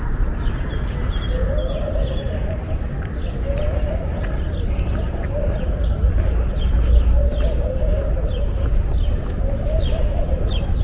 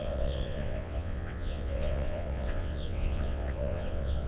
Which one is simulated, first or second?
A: second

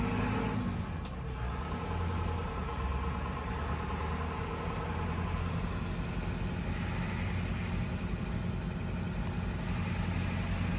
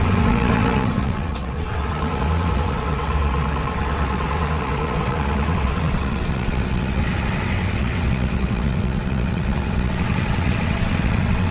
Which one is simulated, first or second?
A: second